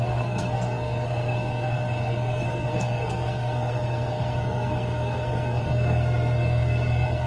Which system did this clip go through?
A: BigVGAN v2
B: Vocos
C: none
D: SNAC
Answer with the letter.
D